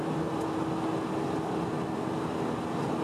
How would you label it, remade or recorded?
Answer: recorded